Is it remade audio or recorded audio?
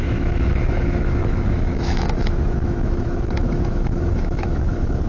remade